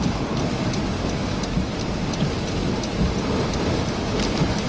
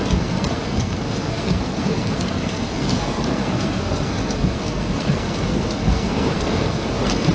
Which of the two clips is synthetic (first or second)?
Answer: second